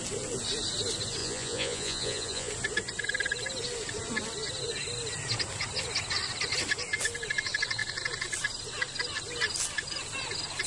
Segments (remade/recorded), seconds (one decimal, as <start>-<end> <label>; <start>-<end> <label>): 0.0-1.2 recorded; 1.2-2.5 remade; 2.5-10.7 recorded